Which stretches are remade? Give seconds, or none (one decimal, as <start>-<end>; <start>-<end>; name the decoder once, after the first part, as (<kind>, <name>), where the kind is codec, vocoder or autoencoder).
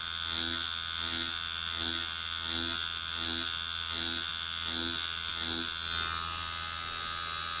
none